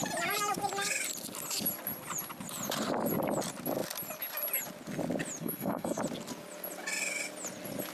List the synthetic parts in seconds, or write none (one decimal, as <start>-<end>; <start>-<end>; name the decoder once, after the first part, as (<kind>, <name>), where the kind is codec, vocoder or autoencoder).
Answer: 5.4-6.0 (codec, SNAC)